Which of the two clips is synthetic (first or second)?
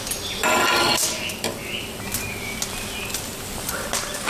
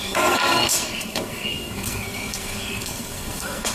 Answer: second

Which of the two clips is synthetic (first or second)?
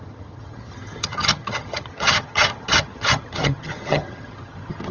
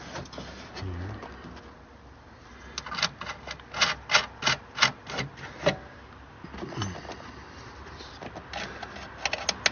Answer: first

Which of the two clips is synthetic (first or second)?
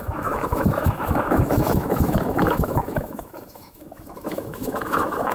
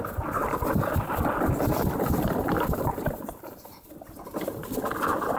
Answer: first